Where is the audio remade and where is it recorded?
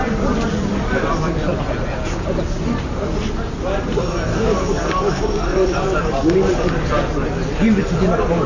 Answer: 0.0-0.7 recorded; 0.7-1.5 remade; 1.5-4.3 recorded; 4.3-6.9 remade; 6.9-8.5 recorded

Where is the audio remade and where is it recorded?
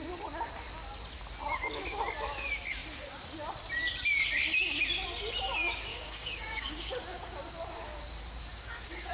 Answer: 0.0-5.9 recorded; 5.9-6.9 remade; 6.9-8.5 recorded; 8.5-9.1 remade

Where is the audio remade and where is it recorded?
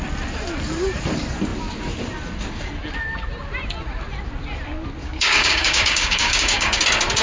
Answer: 0.0-5.0 recorded; 5.0-6.8 remade; 6.8-7.2 recorded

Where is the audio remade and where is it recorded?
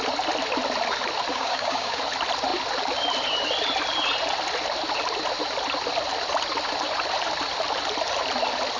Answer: 0.0-1.3 recorded; 1.3-2.0 remade; 2.0-8.8 recorded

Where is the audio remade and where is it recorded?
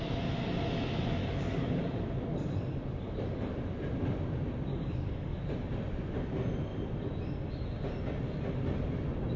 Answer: 0.0-1.2 recorded; 1.2-2.0 remade; 2.0-4.7 recorded; 4.7-5.4 remade; 5.4-9.4 recorded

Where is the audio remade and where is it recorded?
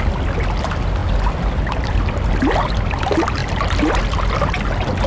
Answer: 0.0-5.1 recorded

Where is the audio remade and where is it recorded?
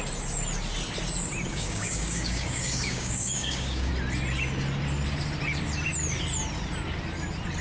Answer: 0.0-1.5 recorded; 1.5-3.9 remade; 3.9-7.6 recorded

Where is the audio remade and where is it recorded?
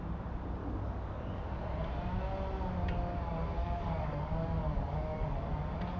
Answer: 0.0-0.6 recorded; 0.6-1.4 remade; 1.4-3.6 recorded; 3.6-5.6 remade; 5.6-6.0 recorded